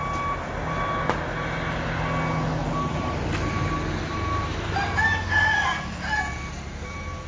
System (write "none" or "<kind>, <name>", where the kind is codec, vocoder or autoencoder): none